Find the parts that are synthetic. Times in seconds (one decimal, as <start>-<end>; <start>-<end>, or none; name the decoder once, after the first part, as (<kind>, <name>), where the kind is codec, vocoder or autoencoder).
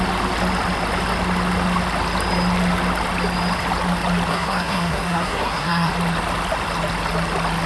4.3-5.9 (codec, SNAC)